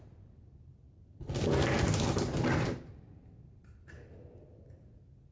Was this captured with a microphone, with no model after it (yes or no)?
yes